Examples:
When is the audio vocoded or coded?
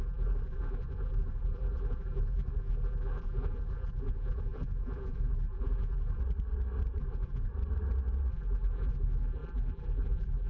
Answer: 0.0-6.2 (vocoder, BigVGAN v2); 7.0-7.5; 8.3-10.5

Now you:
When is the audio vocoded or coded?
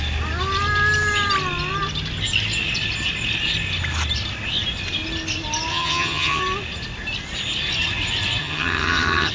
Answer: 5.7-6.4 (vocoder, HiFi-GAN); 8.4-9.3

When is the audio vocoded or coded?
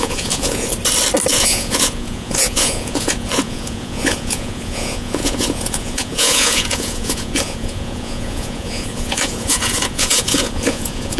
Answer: 0.0-0.7 (vocoder, Vocos); 1.3-11.2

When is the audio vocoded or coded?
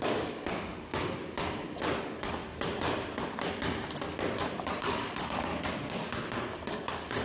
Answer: 0.0-0.9 (codec, DAC); 2.0-2.4; 4.8-5.5; 6.4-7.2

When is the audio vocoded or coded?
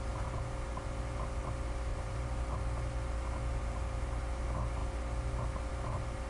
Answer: 1.9-2.5 (vocoder, BigVGAN v2); 3.5-4.2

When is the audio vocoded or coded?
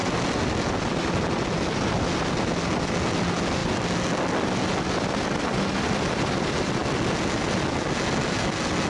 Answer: none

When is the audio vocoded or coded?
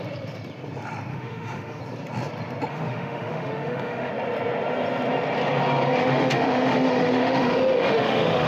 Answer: 1.1-1.8 (autoencoder, DAC-VAE); 2.7-4.1; 6.0-8.5